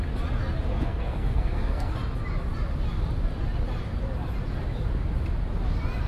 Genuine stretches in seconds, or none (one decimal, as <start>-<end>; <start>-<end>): 0.0-0.7; 1.9-6.1